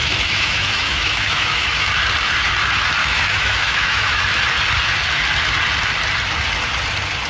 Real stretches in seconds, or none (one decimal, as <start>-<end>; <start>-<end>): 1.9-3.0; 4.2-7.3